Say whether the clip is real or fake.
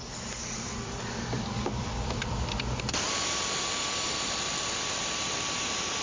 fake